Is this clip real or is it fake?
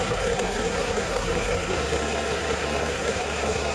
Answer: fake